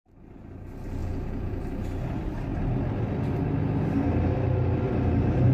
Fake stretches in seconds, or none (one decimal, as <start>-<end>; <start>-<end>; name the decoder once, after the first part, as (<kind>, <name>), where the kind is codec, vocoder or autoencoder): 1.0-1.6 (vocoder, Vocos)